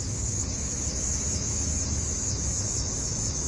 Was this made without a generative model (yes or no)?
no